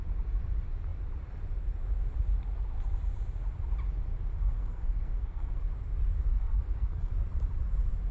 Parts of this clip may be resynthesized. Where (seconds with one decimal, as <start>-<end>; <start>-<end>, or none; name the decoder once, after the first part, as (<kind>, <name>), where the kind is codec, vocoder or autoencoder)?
4.3-5.6 (codec, SNAC); 6.3-7.1